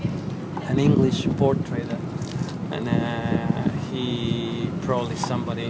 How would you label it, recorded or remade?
recorded